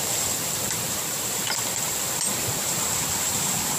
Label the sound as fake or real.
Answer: real